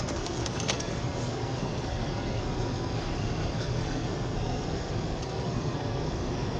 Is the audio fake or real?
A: fake